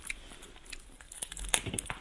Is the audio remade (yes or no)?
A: no